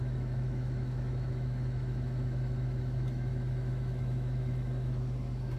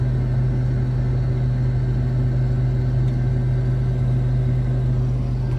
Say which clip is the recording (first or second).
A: second